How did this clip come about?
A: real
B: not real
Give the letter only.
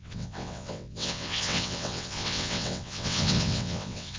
B